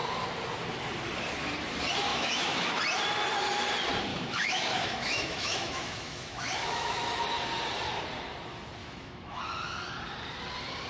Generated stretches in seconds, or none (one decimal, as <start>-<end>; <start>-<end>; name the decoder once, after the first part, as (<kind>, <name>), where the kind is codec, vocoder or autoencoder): 2.1-2.8 (autoencoder, DAC-VAE); 4.1-7.2; 8.8-9.4